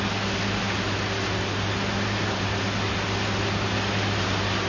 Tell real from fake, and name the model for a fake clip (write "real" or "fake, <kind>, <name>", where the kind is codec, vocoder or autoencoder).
real